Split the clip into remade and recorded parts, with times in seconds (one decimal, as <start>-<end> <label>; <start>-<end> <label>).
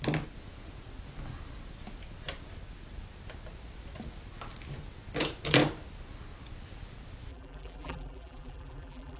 0.0-7.3 recorded; 7.3-9.2 remade